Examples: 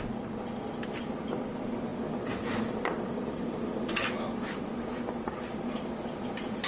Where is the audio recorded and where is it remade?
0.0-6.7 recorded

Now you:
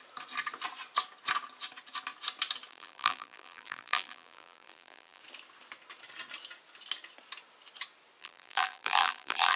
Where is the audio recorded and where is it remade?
0.0-2.7 recorded; 2.7-5.2 remade; 5.2-8.2 recorded; 8.2-9.6 remade

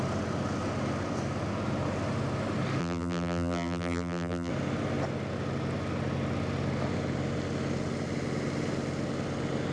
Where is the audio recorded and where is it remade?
0.0-2.8 recorded; 2.8-4.5 remade; 4.5-9.7 recorded

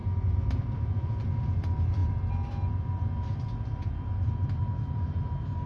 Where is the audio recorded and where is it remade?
0.0-0.6 recorded; 0.6-5.7 remade

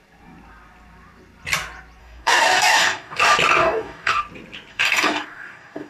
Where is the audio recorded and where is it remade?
0.0-2.0 recorded; 2.0-3.2 remade; 3.2-3.6 recorded; 3.6-4.2 remade; 4.2-4.7 recorded; 4.7-5.9 remade

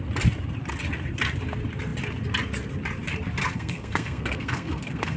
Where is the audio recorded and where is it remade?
0.0-3.4 recorded; 3.4-5.2 remade

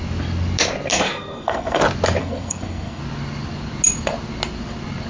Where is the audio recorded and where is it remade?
0.0-0.9 recorded; 0.9-1.8 remade; 1.8-2.2 recorded; 2.2-3.0 remade; 3.0-5.1 recorded

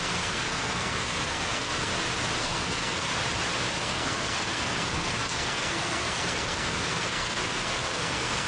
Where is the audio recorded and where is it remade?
0.0-1.9 remade; 1.9-2.4 recorded; 2.4-3.1 remade; 3.1-3.7 recorded; 3.7-8.5 remade